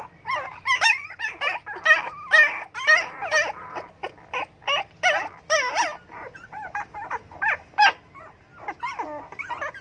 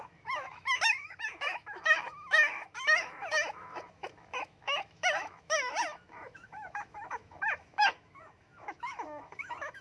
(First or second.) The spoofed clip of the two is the second